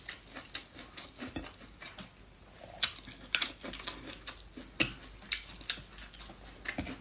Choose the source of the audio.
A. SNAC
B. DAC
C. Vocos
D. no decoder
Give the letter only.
D